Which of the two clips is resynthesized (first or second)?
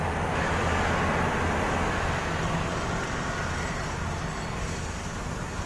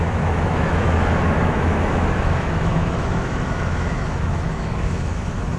second